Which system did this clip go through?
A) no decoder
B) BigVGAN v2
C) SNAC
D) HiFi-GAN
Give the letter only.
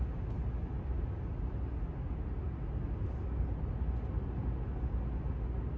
A